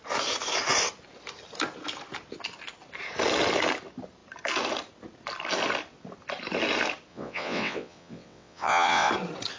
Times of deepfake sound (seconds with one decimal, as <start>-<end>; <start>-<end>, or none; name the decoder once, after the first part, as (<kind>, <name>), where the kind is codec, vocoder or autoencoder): 7.1-9.1 (vocoder, WaveNeXt)